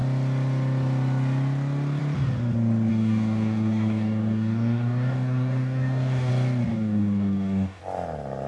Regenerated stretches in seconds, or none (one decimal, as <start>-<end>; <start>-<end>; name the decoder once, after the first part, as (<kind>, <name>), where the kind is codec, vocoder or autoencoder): 2.9-6.3 (codec, DAC); 6.7-7.8